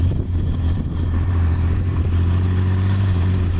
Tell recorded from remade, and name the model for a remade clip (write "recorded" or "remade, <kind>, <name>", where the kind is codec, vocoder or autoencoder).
remade, vocoder, BigVGAN v2